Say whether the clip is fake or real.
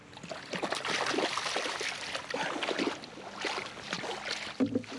real